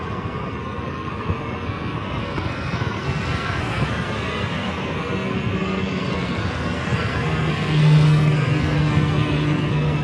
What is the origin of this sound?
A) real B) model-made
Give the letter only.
B